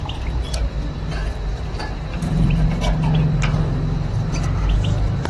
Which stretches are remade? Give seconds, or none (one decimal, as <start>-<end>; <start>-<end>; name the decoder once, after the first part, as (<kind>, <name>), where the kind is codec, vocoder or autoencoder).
2.1-2.6 (vocoder, BigVGAN v2)